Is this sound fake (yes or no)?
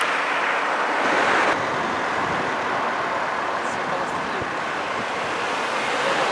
no